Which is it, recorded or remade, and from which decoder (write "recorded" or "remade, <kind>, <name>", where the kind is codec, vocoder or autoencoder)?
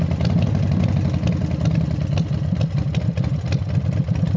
recorded